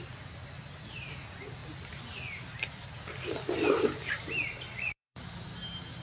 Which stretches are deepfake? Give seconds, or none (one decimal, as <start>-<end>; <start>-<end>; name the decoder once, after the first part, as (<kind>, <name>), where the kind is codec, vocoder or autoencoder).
4.7-5.2 (vocoder, Vocos)